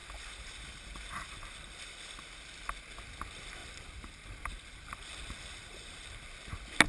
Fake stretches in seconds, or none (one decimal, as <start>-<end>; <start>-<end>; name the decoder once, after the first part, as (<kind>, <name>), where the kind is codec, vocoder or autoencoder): 0.0-2.2 (vocoder, BigVGAN v2); 3.6-6.3